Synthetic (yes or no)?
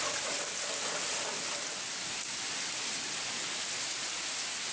no